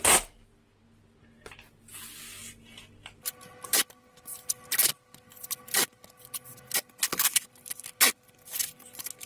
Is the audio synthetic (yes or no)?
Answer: no